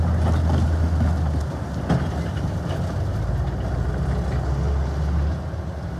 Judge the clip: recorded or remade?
recorded